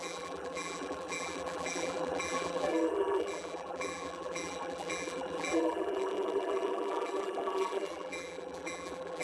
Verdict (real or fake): fake